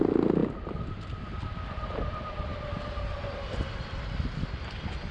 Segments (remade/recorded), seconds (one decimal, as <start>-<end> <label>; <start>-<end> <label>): 0.0-5.1 recorded